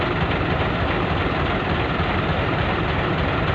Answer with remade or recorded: recorded